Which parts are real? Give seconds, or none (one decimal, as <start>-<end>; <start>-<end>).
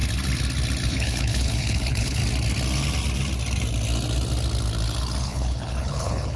0.0-0.9; 2.2-5.2